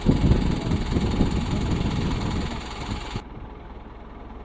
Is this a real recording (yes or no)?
yes